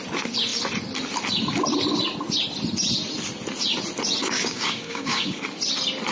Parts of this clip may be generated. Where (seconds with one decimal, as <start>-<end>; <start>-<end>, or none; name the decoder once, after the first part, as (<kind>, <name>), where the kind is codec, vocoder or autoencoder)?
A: 4.2-5.4 (codec, DAC)